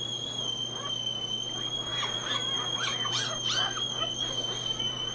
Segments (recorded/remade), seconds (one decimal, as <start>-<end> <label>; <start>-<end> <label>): 0.0-5.1 recorded